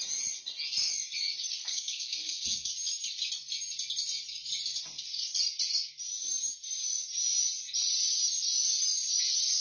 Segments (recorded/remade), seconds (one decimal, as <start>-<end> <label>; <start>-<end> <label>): 0.0-1.6 recorded; 1.6-2.7 remade; 2.7-9.6 recorded